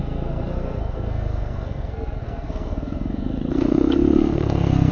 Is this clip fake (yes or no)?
yes